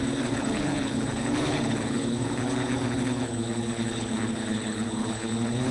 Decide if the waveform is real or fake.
fake